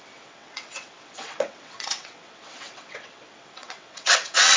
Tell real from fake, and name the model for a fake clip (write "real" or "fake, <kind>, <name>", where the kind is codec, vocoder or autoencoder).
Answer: fake, vocoder, WaveNeXt